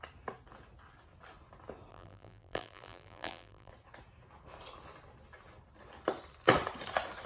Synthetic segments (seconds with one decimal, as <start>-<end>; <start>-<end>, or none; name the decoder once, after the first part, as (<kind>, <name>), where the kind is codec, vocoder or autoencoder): 1.9-3.7 (vocoder, BigVGAN v2)